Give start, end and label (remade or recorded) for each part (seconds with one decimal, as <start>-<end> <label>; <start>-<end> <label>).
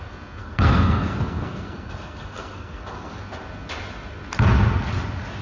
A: 0.0-0.4 recorded; 0.4-3.2 remade; 3.2-5.4 recorded